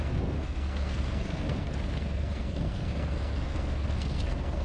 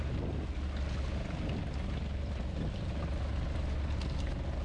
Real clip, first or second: second